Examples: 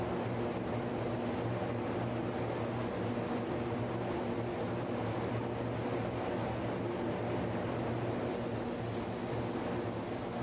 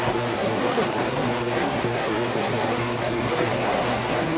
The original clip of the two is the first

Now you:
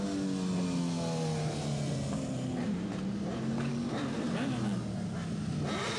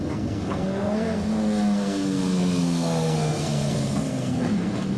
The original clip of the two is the first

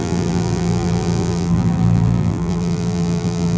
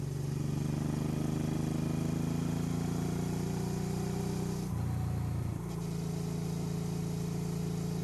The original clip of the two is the second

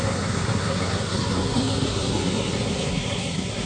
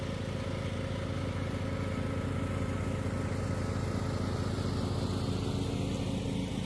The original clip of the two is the second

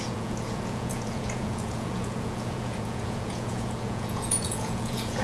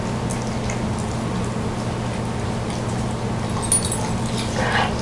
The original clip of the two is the second